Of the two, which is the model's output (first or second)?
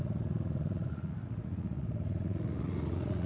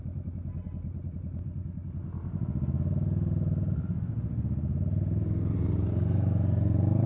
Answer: first